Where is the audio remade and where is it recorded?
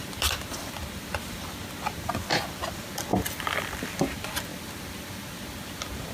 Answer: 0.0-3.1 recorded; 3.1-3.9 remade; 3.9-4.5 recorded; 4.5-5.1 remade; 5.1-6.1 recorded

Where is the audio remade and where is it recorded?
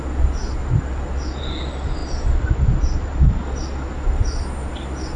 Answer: 0.0-5.2 recorded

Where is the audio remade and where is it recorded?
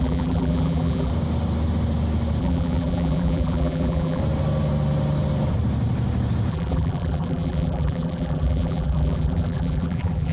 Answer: 0.0-1.1 remade; 1.1-2.4 recorded; 2.4-4.2 remade; 4.2-6.5 recorded; 6.5-10.3 remade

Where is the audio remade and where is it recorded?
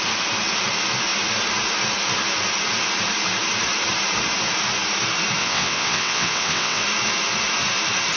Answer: 0.0-5.4 recorded; 5.4-6.8 remade; 6.8-8.2 recorded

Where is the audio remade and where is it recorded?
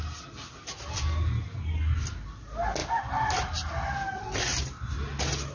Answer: 0.0-5.5 recorded